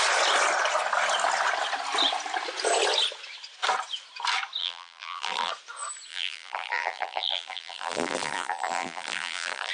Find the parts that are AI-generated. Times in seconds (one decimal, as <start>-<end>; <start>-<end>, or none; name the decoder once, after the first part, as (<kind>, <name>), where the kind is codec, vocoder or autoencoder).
4.6-5.5 (vocoder, BigVGAN v2); 6.1-9.7